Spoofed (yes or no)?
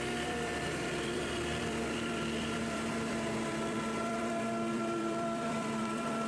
yes